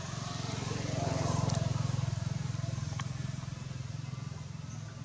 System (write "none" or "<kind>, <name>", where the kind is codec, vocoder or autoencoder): none